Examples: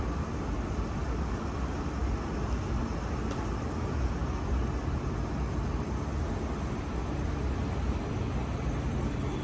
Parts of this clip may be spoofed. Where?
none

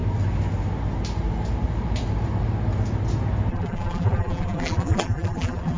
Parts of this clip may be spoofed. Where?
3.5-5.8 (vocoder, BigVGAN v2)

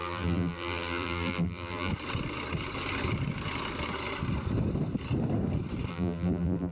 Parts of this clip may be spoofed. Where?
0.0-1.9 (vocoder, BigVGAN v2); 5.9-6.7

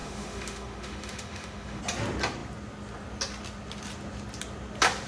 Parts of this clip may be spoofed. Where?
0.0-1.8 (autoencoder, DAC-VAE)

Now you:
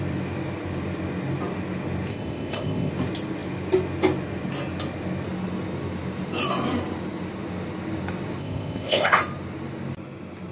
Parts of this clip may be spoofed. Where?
2.1-2.9 (codec, ZipCodec); 8.4-9.2

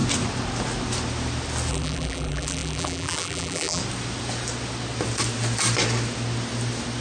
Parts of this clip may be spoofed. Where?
1.7-3.8 (vocoder, BigVGAN v2)